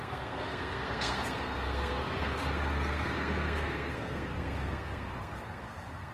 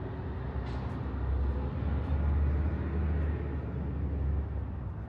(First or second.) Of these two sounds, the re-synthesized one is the first